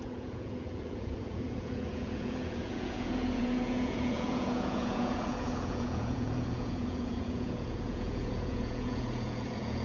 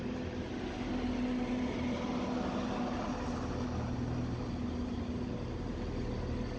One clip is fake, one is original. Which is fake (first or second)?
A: first